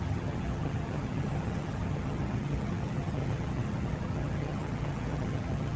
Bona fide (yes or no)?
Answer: no